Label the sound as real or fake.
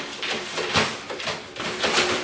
real